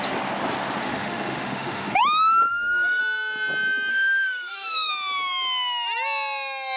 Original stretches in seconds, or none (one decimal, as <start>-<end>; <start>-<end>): 0.0-0.8; 2.0-2.5; 3.0-3.9; 4.9-6.8